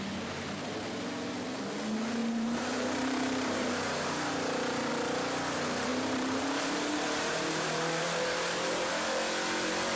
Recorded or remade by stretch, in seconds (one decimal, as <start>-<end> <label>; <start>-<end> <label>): 0.0-2.2 recorded; 2.2-4.9 remade; 4.9-5.9 recorded; 5.9-8.9 remade; 8.9-10.0 recorded

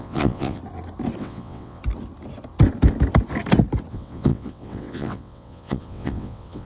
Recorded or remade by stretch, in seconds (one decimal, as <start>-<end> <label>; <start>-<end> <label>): 0.0-0.6 remade; 0.6-1.2 recorded; 1.2-1.8 remade; 1.8-3.9 recorded; 3.9-6.6 remade

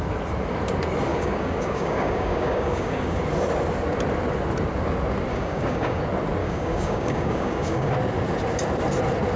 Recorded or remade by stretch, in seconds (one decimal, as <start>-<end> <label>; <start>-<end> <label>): 0.0-1.1 recorded; 1.1-3.2 remade; 3.2-5.3 recorded; 5.3-6.0 remade; 6.0-6.4 recorded; 6.4-7.9 remade; 7.9-9.4 recorded